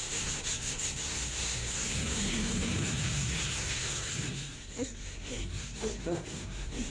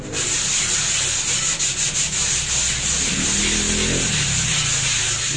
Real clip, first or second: second